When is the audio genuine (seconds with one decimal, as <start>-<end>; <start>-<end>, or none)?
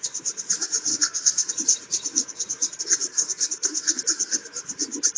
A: 0.0-0.9; 1.5-3.1; 4.0-5.2